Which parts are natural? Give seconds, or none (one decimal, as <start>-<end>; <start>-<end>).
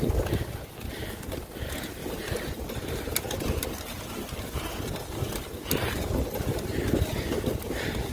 0.0-8.1